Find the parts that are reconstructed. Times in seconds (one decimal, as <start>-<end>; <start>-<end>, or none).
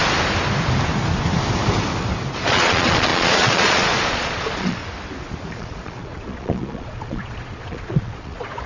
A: 2.5-4.8; 5.5-8.7